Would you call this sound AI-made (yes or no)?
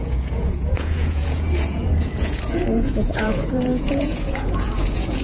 yes